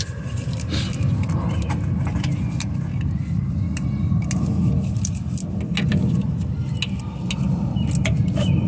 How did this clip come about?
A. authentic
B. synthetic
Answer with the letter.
A